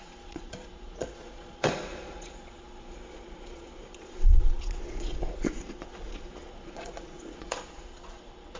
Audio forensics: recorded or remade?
remade